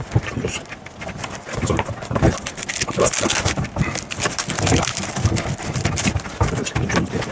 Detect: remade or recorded recorded